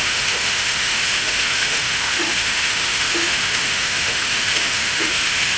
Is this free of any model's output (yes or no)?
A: no